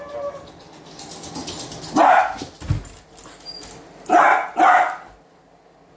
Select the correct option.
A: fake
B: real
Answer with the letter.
B